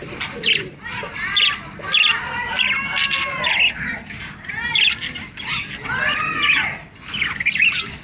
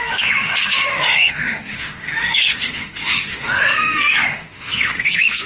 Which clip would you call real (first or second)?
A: first